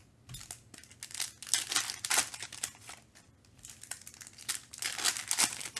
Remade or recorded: recorded